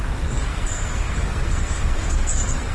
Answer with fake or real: fake